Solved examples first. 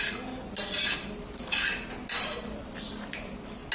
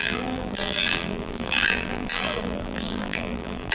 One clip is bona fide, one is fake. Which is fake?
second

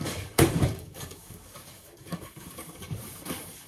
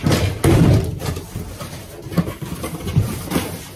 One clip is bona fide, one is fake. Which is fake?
first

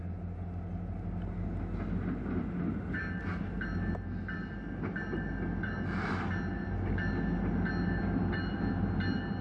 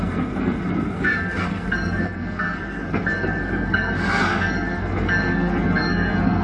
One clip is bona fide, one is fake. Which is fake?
second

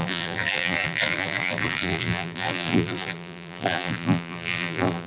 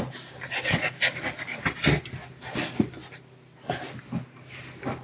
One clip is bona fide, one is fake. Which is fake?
first